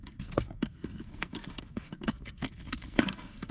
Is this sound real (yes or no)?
no